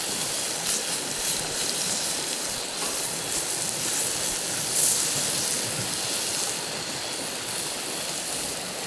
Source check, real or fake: real